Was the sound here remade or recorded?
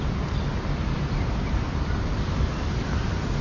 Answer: recorded